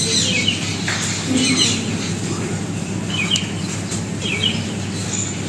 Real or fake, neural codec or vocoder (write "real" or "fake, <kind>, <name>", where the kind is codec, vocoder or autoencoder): real